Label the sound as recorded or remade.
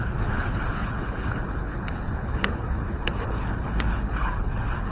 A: remade